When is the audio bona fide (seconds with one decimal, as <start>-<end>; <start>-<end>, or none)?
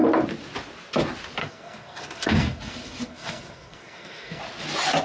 0.0-1.4; 4.4-5.0